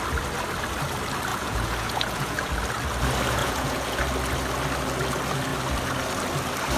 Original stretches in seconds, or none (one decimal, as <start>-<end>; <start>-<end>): 0.0-1.3; 2.5-3.4; 4.0-6.8